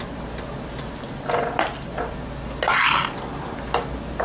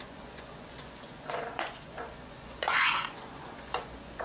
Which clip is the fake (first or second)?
second